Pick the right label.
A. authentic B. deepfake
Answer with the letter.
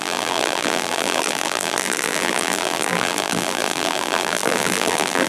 B